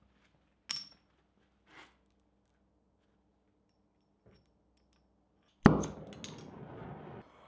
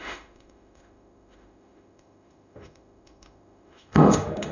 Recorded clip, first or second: first